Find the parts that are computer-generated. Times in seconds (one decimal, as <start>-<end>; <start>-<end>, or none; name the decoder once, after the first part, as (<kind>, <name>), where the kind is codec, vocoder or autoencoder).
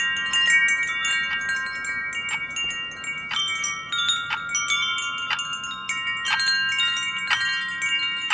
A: none